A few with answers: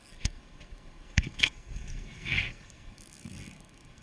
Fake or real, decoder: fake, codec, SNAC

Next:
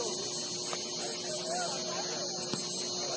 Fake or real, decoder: real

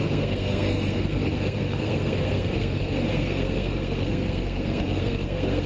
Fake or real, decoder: fake, codec, SNAC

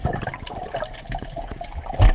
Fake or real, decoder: real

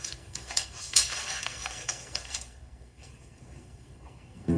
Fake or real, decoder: fake, codec, SNAC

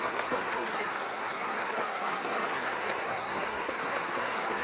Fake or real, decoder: fake, codec, SNAC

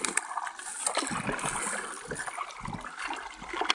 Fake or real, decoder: real